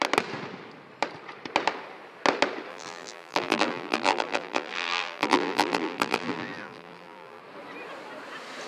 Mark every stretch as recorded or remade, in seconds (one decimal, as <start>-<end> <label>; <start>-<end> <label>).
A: 0.0-2.7 recorded; 2.7-7.4 remade; 7.4-8.7 recorded